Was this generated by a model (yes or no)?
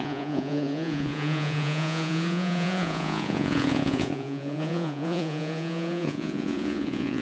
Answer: yes